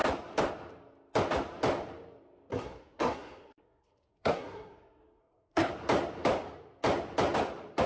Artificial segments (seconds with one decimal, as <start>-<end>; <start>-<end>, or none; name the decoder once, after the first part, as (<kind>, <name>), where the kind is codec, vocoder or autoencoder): 2.5-5.7 (codec, SNAC)